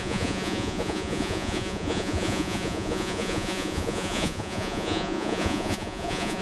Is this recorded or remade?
remade